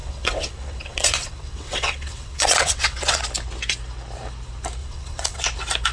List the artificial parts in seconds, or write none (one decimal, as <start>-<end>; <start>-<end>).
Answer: 0.0-3.2; 4.8-5.4